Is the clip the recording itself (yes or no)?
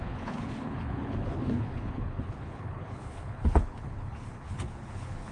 no